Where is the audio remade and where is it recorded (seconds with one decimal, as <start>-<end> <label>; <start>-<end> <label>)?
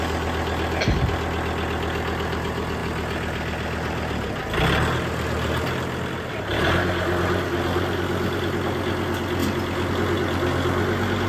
0.0-11.3 recorded